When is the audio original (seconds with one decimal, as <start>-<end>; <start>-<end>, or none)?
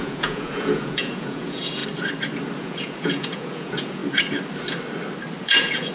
1.8-2.6; 4.0-5.4